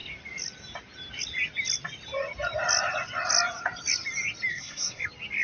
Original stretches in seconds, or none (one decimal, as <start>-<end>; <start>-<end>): 0.0-4.5; 5.0-5.4